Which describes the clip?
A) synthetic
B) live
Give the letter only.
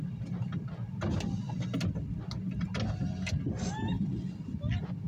B